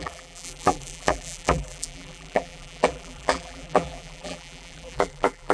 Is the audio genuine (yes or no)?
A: no